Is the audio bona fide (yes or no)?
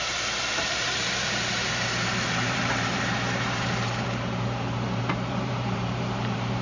no